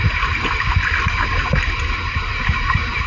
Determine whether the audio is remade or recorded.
recorded